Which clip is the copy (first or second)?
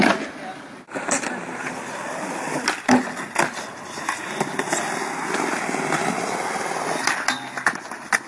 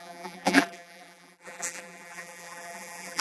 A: second